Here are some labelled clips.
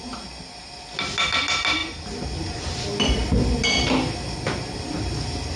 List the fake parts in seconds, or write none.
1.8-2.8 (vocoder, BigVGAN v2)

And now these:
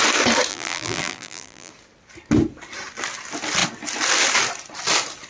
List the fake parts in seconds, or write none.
0.5-1.7 (vocoder, BigVGAN v2)

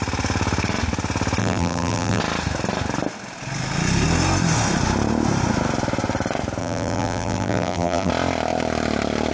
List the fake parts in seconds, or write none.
1.4-2.2 (vocoder, BigVGAN v2); 6.6-8.1